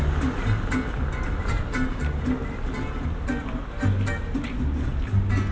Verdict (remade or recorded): recorded